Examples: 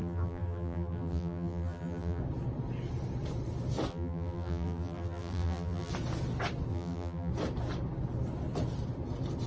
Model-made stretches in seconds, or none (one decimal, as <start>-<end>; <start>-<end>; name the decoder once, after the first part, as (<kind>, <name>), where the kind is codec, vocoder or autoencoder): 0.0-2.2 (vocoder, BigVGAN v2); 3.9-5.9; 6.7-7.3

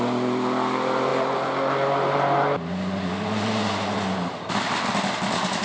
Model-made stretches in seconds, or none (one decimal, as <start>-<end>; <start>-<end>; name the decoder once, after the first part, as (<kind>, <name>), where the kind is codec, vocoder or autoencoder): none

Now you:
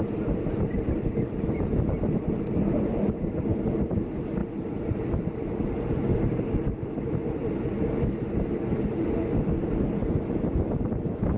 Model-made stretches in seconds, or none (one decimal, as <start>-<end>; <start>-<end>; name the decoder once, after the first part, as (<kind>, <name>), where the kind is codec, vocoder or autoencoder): none